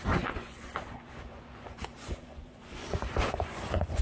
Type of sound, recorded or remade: remade